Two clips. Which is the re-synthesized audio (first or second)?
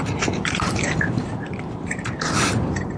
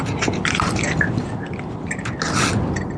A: first